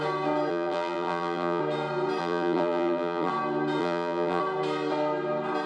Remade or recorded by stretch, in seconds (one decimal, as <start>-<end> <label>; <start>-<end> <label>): 0.0-0.5 recorded; 0.5-1.6 remade; 1.6-2.2 recorded; 2.2-3.3 remade; 3.3-3.8 recorded; 3.8-4.4 remade; 4.4-5.7 recorded